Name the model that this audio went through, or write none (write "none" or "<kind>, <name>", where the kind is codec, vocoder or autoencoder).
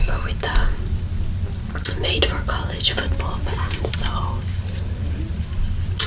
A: none